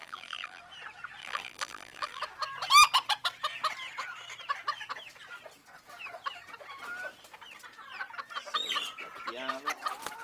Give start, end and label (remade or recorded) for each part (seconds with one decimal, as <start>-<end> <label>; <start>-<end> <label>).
0.0-0.6 remade; 0.6-1.2 recorded; 1.2-2.2 remade; 2.2-10.2 recorded